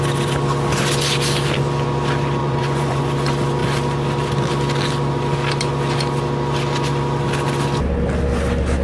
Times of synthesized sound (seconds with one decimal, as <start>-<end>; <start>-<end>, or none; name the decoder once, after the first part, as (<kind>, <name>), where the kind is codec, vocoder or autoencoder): 2.4-3.0 (vocoder, Vocos)